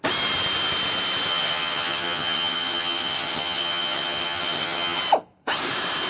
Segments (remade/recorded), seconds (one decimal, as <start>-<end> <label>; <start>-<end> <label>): 0.0-1.3 recorded; 1.3-5.0 remade; 5.0-6.1 recorded